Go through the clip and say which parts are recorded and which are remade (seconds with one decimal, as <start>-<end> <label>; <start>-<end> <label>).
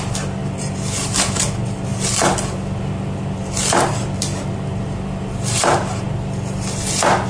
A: 0.0-7.3 recorded